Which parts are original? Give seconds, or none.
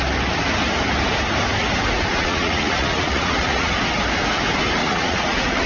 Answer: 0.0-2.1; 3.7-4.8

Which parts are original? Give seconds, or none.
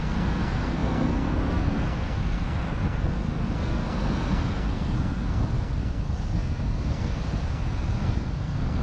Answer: none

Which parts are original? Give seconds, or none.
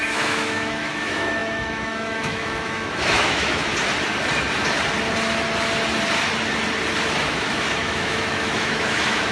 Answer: 3.7-7.3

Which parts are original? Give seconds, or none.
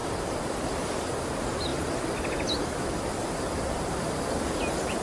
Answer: 0.0-5.0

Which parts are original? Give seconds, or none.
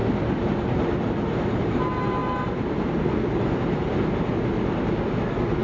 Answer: 0.0-5.6